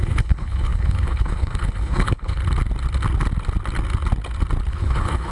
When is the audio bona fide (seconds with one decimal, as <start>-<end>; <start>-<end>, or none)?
2.4-4.7